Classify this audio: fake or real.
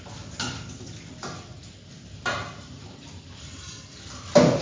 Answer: real